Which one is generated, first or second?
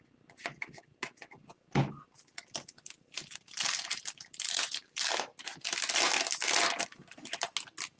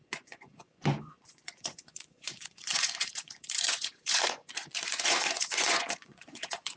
second